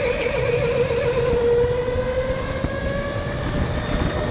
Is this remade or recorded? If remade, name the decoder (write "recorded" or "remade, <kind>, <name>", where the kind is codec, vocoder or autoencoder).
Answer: recorded